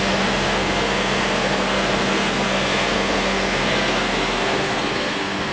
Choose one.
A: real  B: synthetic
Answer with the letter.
B